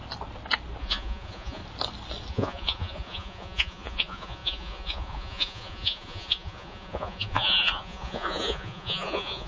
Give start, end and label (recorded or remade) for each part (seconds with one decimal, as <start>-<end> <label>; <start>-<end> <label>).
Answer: 0.0-0.8 recorded; 0.8-1.6 remade; 1.6-2.3 recorded; 2.3-9.5 remade